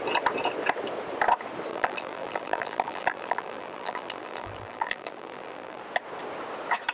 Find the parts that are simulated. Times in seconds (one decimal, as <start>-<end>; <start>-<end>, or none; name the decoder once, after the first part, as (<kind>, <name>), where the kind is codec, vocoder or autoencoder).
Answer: 1.7-5.8 (vocoder, BigVGAN v2)